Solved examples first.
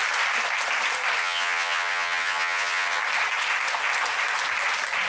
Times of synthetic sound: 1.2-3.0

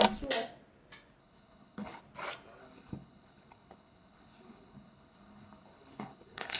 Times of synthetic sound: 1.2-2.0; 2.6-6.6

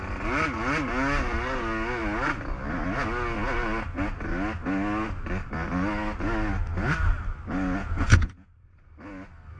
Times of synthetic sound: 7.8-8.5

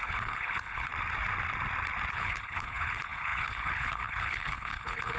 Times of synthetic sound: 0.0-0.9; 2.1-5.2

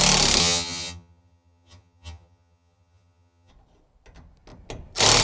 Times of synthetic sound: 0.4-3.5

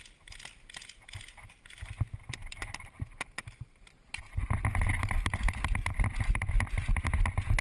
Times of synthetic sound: 2.4-4.2; 5.8-6.5

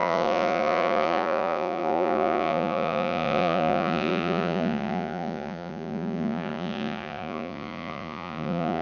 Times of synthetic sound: 0.0-8.8

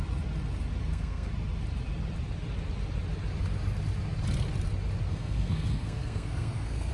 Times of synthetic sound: 0.8-1.3; 5.1-6.9